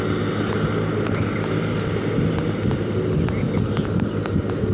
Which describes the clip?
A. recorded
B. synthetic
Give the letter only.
A